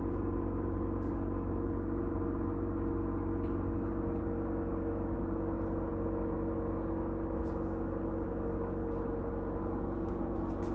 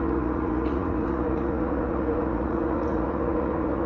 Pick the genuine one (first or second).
first